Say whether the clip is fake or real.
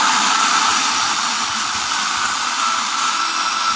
real